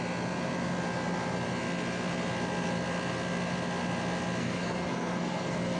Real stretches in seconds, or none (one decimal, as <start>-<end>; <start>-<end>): 0.0-4.4